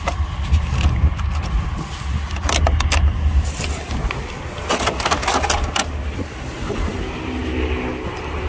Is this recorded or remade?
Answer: recorded